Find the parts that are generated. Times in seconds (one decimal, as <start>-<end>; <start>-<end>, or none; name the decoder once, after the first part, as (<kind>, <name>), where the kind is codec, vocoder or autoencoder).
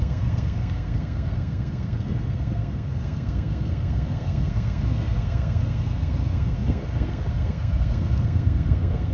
0.0-9.1 (codec, SNAC)